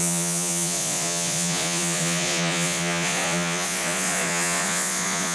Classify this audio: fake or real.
fake